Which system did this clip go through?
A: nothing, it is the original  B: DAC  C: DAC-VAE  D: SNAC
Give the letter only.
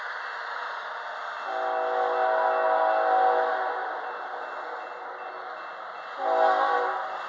A